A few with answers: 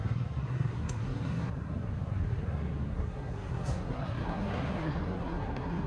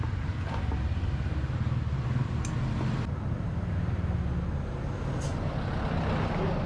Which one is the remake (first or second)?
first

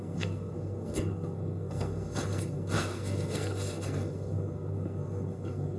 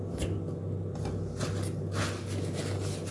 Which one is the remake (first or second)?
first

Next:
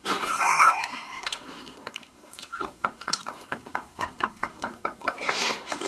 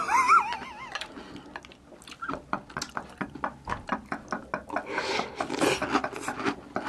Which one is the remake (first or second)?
first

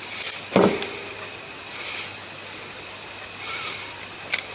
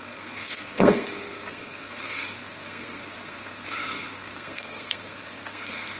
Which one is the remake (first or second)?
second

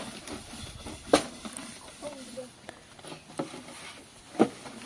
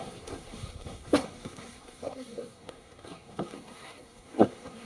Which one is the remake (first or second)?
second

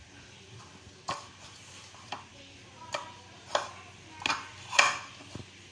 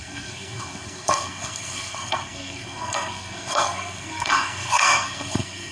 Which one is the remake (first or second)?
second